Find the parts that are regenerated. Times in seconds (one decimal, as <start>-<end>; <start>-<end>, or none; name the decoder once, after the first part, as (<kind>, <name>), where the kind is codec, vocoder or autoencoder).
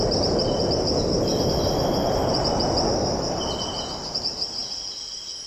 4.6-5.5 (vocoder, BigVGAN v2)